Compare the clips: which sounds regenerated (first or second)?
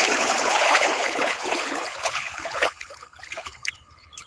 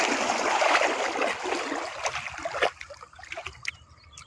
first